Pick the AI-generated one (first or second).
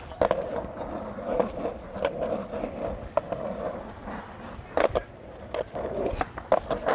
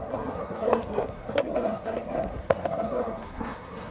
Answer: second